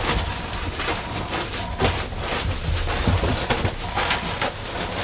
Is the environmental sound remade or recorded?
recorded